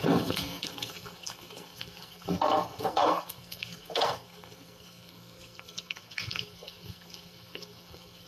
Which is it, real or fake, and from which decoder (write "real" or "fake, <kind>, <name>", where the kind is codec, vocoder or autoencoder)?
fake, codec, SNAC